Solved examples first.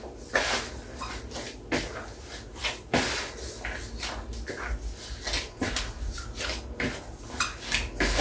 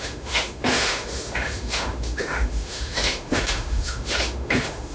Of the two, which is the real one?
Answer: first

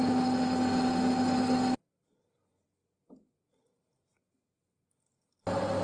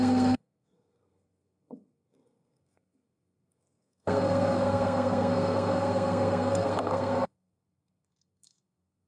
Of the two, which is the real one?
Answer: first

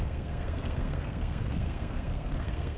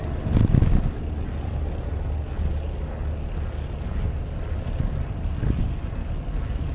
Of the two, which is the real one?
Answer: second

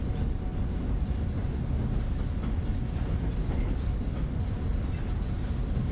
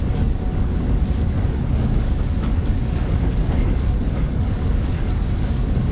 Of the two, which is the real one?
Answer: first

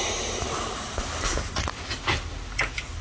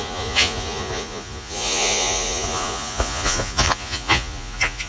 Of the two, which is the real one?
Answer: first